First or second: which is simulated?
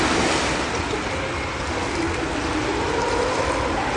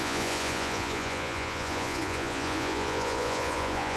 second